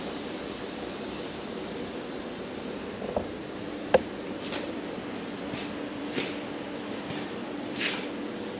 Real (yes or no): no